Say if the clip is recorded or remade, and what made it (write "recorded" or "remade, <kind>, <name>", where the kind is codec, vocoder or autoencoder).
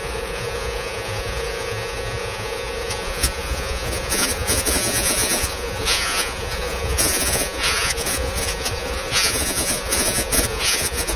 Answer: remade, vocoder, Vocos